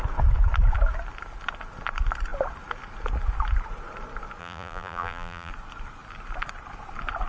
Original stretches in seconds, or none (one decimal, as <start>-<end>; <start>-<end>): 0.0-4.4; 5.5-7.3